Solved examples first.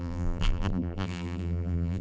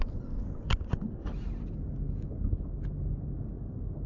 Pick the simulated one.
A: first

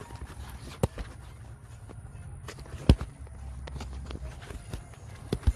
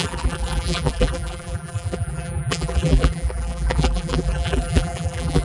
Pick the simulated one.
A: second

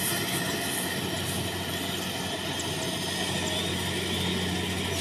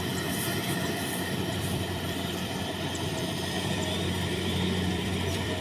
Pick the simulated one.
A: second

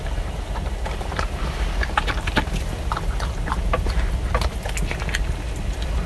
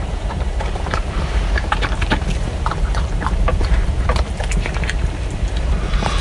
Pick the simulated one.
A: second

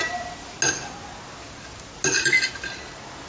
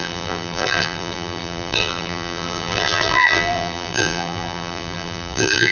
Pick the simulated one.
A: second